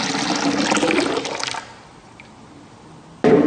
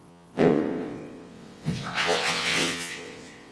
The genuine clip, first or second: first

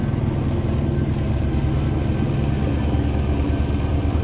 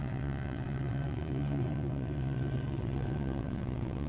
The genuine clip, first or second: first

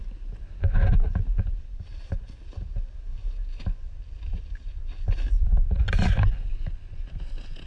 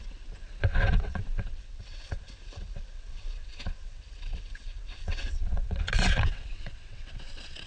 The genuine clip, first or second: first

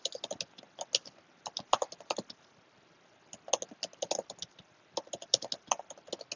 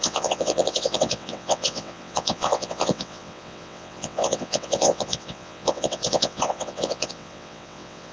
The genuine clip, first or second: first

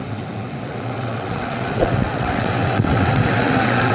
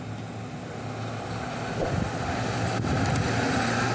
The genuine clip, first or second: second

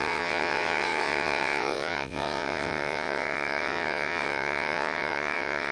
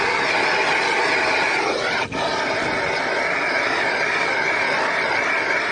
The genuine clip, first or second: second